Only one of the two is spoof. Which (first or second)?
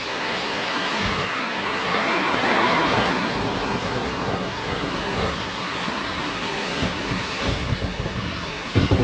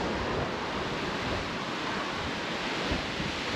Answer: first